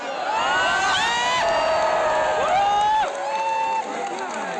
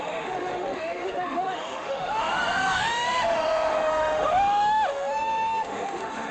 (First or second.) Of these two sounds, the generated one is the second